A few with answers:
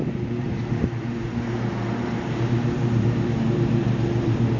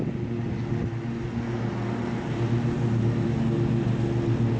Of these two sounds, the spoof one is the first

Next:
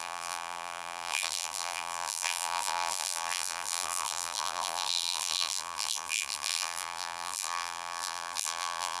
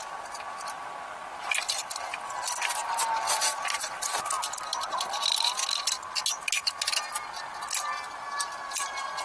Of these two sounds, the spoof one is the first